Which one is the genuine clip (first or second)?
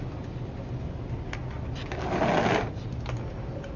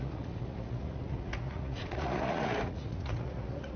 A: first